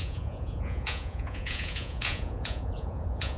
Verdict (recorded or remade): remade